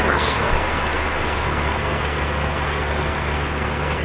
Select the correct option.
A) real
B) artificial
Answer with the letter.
B